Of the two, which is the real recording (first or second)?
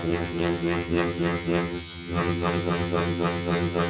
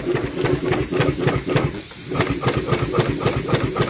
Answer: second